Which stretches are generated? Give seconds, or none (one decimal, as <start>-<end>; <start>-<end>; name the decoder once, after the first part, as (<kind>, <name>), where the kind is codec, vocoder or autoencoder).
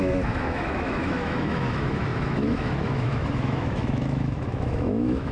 0.0-5.3 (autoencoder, DAC-VAE)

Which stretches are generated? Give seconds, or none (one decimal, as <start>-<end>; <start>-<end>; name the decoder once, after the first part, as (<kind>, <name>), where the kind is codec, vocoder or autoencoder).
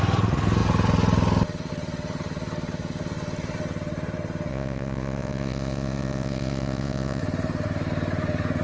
4.5-7.2 (vocoder, Vocos)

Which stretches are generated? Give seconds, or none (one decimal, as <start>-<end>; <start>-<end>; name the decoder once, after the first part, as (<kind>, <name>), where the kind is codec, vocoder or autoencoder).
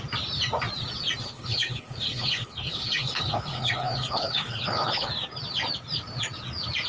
1.2-5.1 (codec, HILCodec)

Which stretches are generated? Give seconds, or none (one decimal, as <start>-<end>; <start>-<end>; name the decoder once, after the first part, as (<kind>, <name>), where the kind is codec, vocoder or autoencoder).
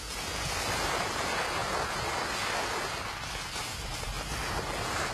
none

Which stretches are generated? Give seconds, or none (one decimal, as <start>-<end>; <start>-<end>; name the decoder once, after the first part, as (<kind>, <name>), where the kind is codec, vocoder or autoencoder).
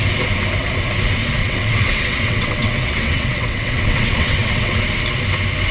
1.4-4.8 (vocoder, WaveNeXt)